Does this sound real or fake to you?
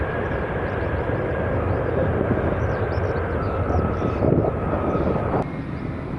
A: real